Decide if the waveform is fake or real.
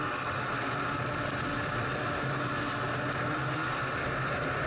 real